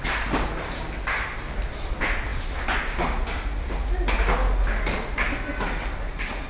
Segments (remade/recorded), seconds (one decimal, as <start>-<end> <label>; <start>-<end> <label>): 0.0-6.5 recorded